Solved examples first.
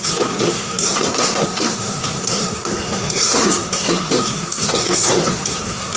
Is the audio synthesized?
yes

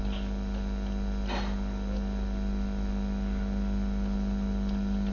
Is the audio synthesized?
no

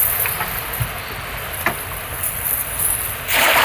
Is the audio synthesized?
no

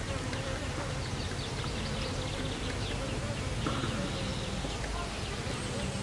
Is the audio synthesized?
no